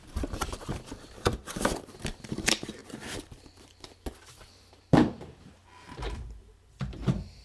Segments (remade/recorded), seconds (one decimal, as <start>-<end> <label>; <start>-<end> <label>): 0.0-2.8 remade; 2.8-4.2 recorded; 4.2-5.6 remade; 5.6-6.8 recorded; 6.8-7.4 remade